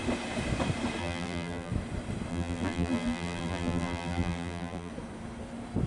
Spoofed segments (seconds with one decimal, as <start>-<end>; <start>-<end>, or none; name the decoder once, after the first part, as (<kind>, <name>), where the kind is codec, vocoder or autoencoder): 1.0-1.7 (vocoder, BigVGAN v2); 2.3-4.9